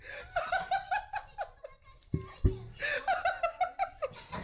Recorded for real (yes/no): yes